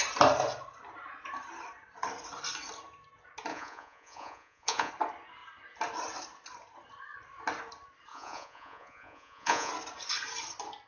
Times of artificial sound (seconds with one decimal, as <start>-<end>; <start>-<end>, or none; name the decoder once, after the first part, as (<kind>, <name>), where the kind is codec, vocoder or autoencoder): 3.5-4.9 (vocoder, Vocos); 8.1-9.7